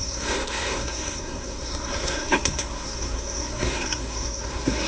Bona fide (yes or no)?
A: no